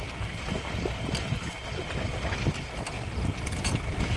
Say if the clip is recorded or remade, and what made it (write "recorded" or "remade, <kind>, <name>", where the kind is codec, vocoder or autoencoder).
recorded